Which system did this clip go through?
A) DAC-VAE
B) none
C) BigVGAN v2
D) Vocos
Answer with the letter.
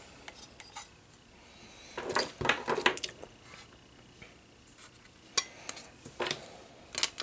B